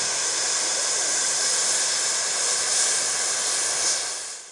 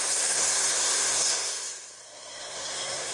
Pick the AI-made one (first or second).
second